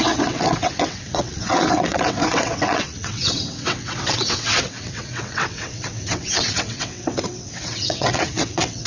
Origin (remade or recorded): remade